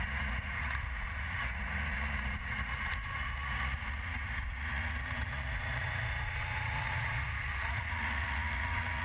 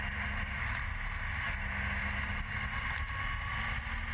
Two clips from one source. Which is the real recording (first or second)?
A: second